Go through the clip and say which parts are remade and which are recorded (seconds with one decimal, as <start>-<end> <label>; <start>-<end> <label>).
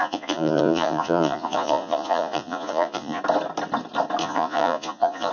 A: 0.0-3.2 remade; 3.2-4.2 recorded; 4.2-5.3 remade